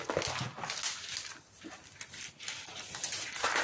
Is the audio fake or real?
real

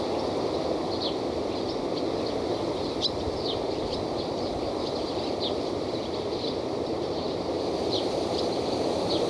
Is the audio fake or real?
fake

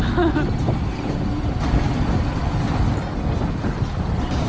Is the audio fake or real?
real